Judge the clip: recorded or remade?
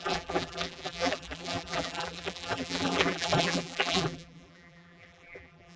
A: remade